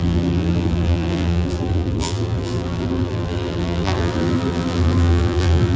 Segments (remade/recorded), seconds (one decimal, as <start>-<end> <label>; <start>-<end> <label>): 0.0-5.8 remade